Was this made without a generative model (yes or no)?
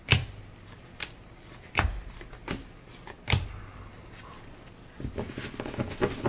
yes